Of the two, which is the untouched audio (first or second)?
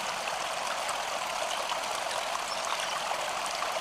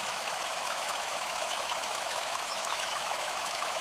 first